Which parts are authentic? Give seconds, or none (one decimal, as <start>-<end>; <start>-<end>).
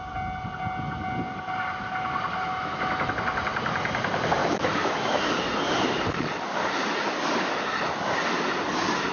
0.0-2.5; 3.1-4.4; 5.2-9.1